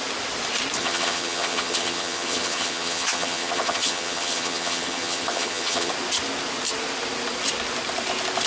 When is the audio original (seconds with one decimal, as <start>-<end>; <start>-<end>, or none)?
0.0-0.8; 5.9-8.5